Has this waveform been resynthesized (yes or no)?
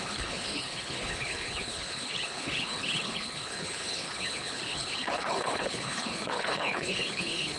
yes